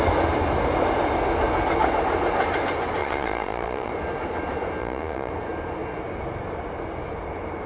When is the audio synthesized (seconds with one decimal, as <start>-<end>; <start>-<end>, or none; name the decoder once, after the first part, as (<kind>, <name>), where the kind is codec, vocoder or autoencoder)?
3.0-3.9 (vocoder, Vocos); 4.8-5.3

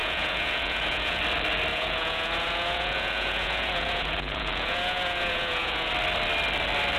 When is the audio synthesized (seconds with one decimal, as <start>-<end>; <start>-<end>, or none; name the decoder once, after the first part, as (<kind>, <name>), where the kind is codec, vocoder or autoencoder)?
0.0-1.2 (vocoder, Vocos); 1.7-5.9

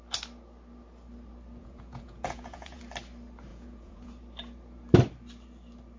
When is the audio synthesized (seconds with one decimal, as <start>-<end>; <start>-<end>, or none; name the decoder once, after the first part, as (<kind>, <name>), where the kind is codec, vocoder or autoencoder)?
1.6-2.8 (vocoder, Vocos); 3.5-4.1

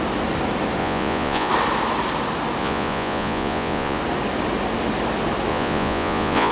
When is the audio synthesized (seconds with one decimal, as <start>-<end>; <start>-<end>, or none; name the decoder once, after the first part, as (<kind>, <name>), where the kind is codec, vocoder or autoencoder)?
0.8-1.5 (vocoder, Vocos); 2.6-4.0; 5.5-6.5

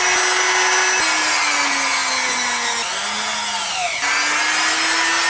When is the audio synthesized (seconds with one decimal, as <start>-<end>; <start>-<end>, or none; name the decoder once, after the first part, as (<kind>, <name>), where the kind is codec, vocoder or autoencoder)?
none